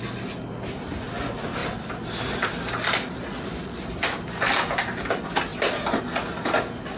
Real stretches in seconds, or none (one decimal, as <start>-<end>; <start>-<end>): 0.0-7.0

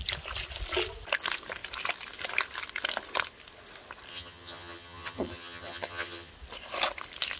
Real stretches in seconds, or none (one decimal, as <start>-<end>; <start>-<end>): 0.0-4.1; 6.3-7.4

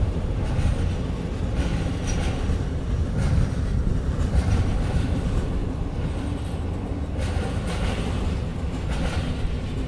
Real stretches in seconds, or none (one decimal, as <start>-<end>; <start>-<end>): 0.7-3.9; 5.6-7.5; 8.5-9.4

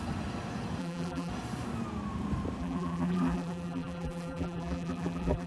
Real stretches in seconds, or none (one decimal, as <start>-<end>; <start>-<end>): 0.0-0.8; 1.3-2.6

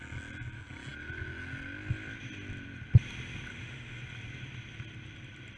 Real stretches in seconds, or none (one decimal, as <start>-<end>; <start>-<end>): 0.0-3.5; 4.0-5.6

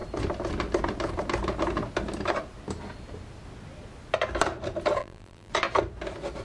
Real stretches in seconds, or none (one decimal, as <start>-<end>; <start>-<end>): 0.0-5.0; 5.5-6.4

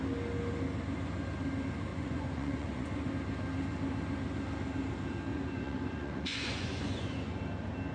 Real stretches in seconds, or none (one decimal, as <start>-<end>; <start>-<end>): 0.0-1.9; 3.1-5.3; 7.4-7.9